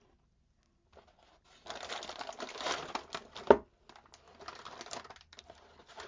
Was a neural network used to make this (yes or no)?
no